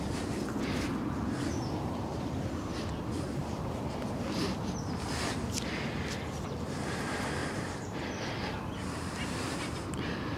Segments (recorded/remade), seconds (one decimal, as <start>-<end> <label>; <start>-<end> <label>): 0.0-3.4 recorded; 3.4-4.0 remade; 4.0-7.4 recorded; 7.4-8.0 remade; 8.0-10.4 recorded